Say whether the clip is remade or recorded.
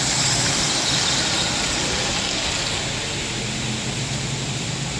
recorded